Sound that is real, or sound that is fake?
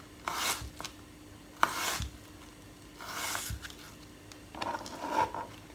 real